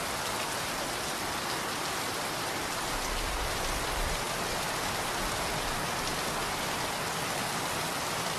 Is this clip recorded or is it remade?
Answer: recorded